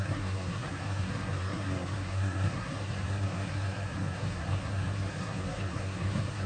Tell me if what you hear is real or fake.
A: fake